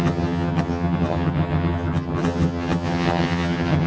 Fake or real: fake